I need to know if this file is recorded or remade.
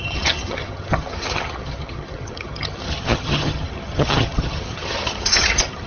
remade